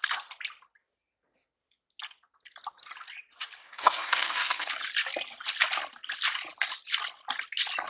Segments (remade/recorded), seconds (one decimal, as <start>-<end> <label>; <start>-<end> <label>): 0.0-3.6 recorded; 3.6-4.7 remade; 4.7-7.9 recorded